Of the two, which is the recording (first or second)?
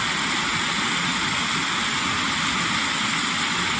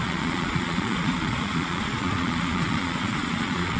first